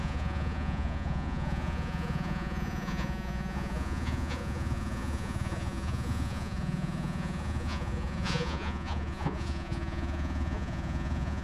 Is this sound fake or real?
fake